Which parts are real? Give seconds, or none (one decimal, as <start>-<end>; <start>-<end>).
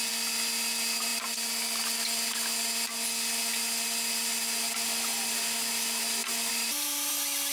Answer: 0.0-6.2; 7.1-7.5